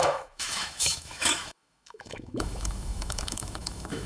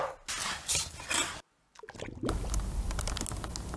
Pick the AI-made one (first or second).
first